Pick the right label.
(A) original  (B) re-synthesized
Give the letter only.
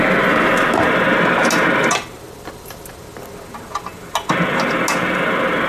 A